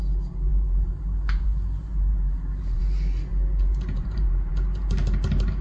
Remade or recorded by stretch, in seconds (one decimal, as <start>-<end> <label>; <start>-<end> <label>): 0.0-0.5 recorded; 0.5-2.8 remade; 2.8-3.3 recorded; 3.3-4.5 remade; 4.5-5.6 recorded

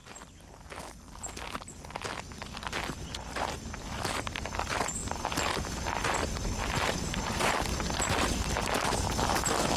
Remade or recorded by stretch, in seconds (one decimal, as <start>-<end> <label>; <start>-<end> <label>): 0.0-4.1 remade; 4.1-5.0 recorded; 5.0-8.9 remade; 8.9-9.8 recorded